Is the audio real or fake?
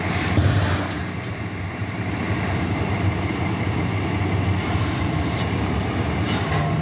fake